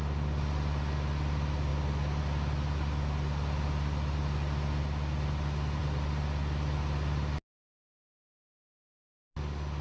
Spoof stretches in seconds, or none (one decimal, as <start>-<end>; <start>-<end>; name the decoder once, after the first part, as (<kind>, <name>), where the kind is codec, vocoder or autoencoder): none